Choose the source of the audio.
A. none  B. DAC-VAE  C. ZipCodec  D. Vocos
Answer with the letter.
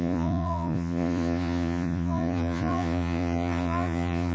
D